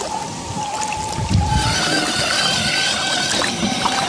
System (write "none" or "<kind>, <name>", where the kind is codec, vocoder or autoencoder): none